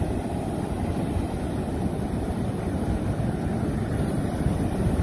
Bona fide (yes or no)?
yes